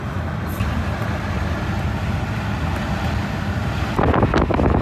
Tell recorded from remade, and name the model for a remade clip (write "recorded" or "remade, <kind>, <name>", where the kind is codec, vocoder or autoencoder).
recorded